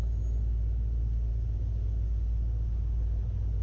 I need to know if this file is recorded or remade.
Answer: recorded